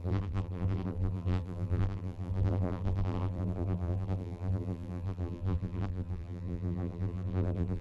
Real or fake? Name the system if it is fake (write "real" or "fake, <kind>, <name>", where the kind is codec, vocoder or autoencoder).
fake, vocoder, BigVGAN v2